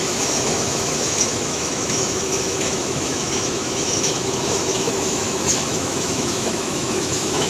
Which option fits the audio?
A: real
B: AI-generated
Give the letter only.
B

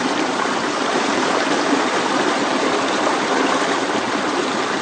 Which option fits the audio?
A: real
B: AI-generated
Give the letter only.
B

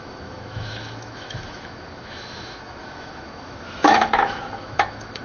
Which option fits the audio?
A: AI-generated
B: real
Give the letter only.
A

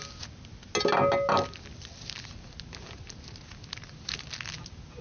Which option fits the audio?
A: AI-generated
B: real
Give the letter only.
B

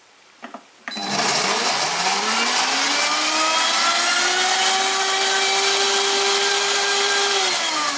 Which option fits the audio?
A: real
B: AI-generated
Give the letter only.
A